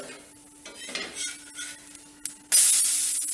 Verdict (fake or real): real